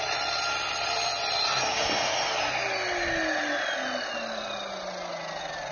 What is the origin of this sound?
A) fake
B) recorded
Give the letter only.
B